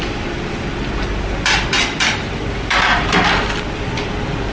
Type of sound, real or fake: real